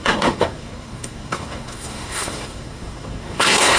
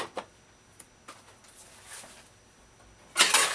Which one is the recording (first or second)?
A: second